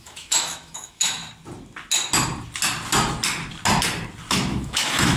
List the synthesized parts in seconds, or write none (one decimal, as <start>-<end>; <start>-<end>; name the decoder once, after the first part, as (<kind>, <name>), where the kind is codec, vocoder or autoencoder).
0.0-1.2 (autoencoder, DAC-VAE); 4.3-5.2